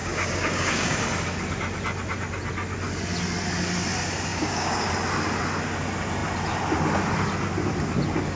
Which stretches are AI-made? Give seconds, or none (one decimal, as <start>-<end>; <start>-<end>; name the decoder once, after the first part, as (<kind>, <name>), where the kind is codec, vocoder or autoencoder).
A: 0.0-1.0 (codec, DAC); 4.3-4.9